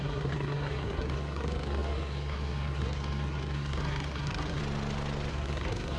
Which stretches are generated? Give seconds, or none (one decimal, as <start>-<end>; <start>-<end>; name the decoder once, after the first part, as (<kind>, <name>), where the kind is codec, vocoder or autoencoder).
0.0-4.6 (codec, SNAC); 5.3-6.0